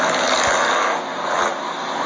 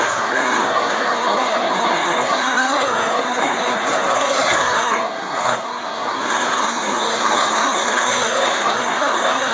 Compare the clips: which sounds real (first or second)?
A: first